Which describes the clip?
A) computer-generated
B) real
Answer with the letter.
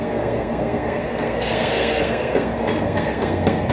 A